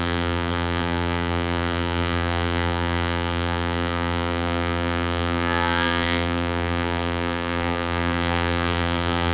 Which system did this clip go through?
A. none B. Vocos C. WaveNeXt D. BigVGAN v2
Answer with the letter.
D